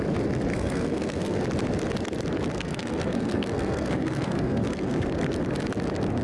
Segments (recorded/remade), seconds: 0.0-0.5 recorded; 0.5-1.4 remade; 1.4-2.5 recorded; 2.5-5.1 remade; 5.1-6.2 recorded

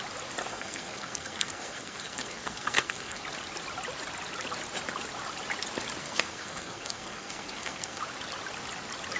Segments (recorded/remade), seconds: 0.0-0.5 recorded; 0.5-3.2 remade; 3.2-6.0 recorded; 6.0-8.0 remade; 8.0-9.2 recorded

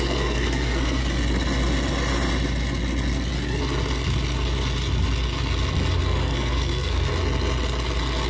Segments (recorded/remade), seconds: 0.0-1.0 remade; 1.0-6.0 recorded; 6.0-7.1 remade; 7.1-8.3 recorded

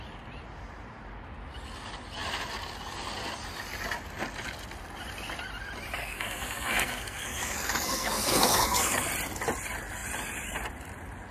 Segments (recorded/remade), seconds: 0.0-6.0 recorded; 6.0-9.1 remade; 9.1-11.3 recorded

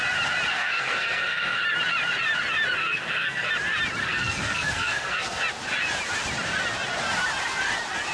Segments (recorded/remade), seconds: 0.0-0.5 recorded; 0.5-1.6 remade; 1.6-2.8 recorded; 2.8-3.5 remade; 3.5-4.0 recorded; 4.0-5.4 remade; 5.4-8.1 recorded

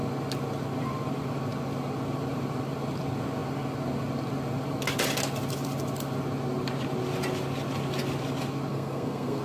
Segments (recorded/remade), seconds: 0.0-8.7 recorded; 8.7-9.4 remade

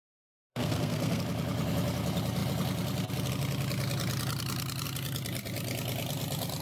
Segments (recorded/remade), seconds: 0.0-0.5 recorded; 0.5-1.2 remade; 1.2-6.6 recorded

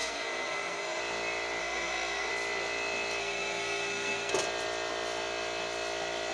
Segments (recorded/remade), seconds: 0.0-1.0 remade; 1.0-1.6 recorded; 1.6-2.3 remade; 2.3-3.2 recorded; 3.2-4.3 remade; 4.3-6.3 recorded